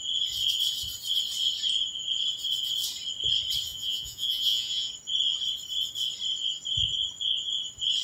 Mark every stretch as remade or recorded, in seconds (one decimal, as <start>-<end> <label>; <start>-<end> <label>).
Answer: 0.0-3.7 recorded; 3.7-4.9 remade; 4.9-8.0 recorded